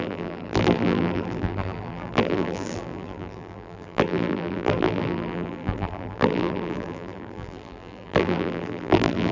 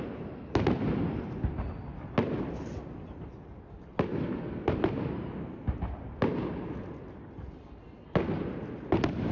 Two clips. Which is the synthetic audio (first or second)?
first